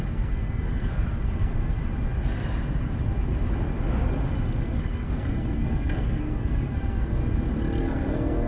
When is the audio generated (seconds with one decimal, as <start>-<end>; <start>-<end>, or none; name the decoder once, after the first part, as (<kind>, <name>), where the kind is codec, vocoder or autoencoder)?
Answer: 0.0-1.8 (codec, SNAC); 4.6-7.2; 7.8-8.5